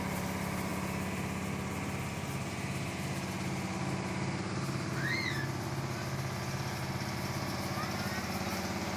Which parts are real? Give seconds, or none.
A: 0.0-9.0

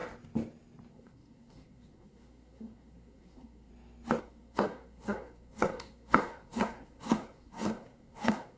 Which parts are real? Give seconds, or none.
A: 0.0-0.9; 3.7-4.2

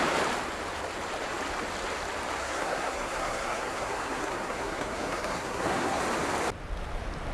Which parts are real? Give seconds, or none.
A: 0.0-2.4; 6.0-7.3

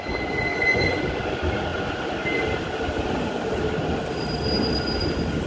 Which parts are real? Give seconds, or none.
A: 0.0-0.5; 1.0-5.5